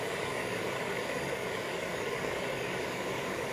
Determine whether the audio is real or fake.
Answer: fake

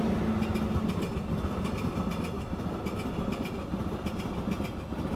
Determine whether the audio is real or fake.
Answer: real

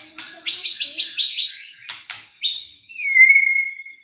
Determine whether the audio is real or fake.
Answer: fake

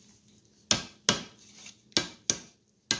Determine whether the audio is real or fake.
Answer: real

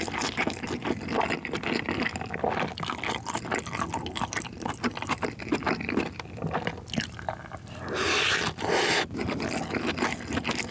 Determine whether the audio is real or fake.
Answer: real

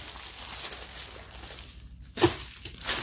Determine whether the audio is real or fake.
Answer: real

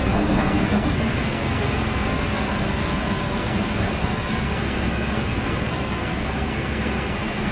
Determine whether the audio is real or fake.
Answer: fake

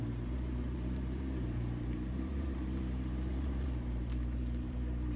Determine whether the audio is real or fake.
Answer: fake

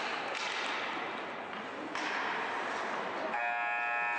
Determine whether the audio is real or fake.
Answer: real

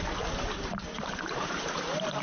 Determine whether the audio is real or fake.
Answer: real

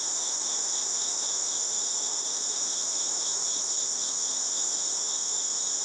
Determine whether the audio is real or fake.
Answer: fake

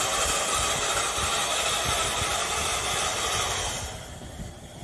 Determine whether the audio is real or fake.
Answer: real